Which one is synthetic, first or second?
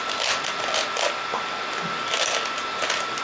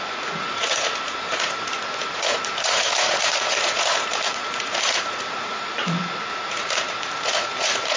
second